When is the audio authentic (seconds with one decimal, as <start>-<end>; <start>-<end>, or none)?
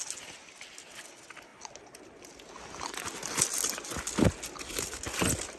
0.0-5.6